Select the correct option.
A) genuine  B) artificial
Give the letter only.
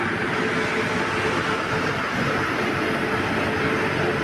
A